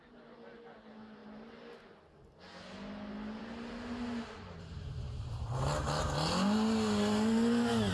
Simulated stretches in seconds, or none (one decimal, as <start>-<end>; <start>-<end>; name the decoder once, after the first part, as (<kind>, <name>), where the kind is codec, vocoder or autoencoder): none